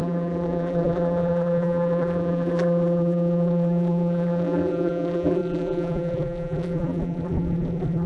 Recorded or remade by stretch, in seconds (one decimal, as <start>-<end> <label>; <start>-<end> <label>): 0.0-8.1 remade